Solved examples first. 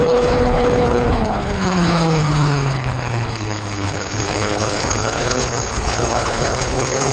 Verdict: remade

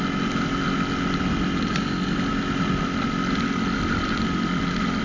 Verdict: recorded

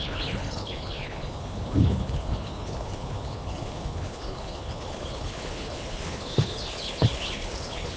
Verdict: remade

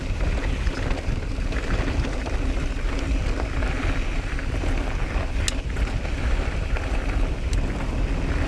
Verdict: recorded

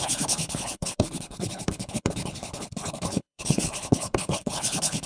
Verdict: remade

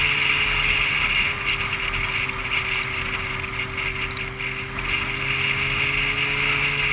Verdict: recorded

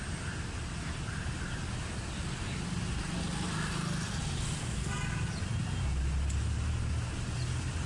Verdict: recorded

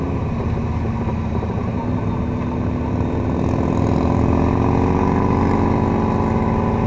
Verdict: recorded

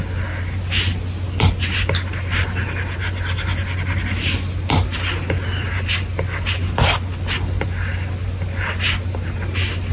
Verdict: recorded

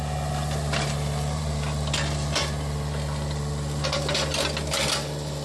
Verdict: recorded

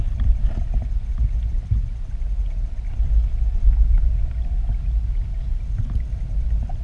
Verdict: recorded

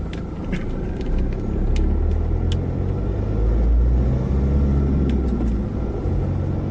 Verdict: recorded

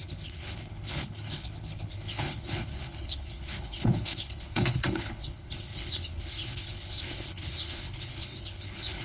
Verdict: remade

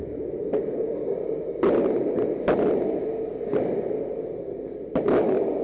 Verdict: recorded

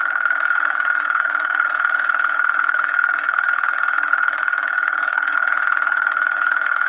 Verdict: remade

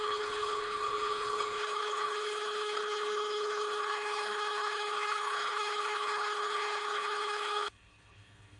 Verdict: remade